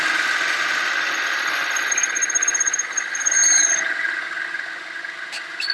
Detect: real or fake real